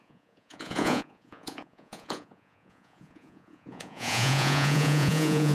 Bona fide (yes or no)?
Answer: no